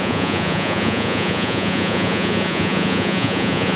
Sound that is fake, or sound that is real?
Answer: fake